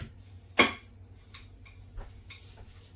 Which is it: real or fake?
real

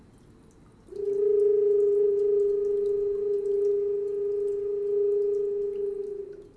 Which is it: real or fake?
real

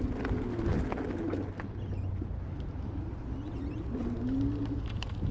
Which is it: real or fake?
real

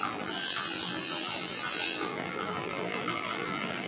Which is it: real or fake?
fake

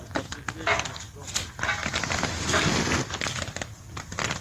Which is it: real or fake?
real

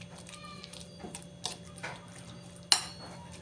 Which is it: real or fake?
real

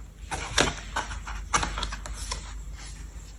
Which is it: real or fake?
real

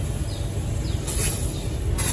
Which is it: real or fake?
real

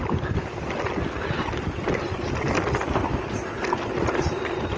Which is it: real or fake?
real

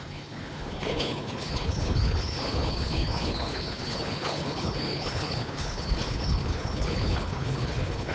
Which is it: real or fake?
fake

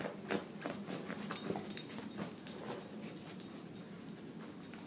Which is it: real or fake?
real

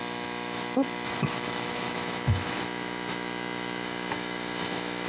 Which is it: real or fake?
fake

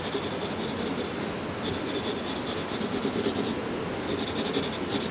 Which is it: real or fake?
real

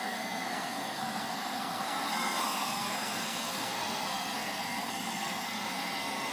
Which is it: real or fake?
fake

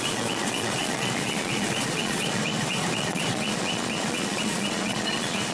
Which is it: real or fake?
fake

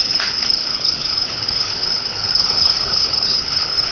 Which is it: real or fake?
fake